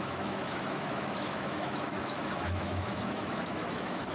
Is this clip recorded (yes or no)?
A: no